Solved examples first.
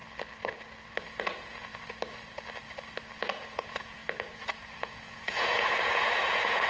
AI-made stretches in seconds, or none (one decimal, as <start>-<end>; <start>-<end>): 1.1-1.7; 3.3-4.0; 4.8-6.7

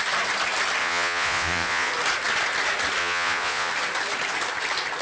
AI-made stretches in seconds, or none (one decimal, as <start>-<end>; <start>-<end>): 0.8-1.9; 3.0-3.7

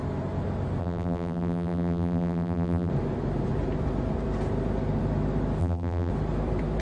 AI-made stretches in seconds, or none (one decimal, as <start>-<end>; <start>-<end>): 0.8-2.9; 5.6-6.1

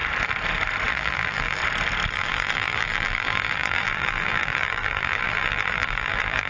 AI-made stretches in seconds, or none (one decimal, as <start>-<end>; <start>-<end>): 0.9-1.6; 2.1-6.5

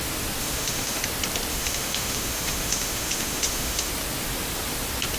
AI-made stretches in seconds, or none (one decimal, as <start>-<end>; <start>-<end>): 0.4-1.0; 1.5-3.9

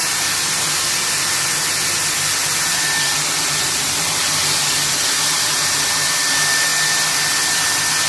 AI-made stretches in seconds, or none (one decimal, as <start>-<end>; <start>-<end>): 0.0-6.7

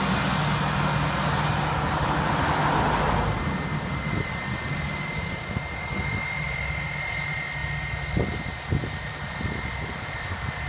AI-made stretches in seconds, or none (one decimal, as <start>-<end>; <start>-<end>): none